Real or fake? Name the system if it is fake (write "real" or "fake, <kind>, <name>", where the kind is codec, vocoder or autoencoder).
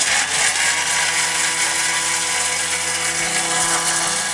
real